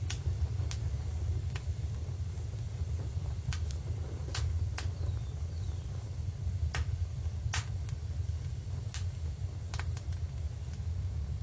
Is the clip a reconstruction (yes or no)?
no